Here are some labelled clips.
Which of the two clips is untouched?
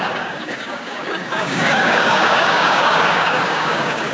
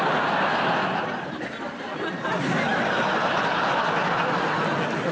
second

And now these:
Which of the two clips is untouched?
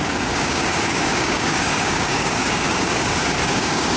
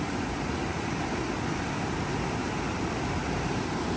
second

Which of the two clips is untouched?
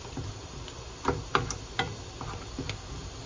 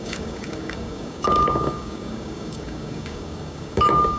first